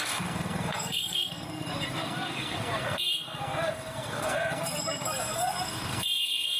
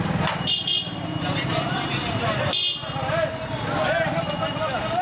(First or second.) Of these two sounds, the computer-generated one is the first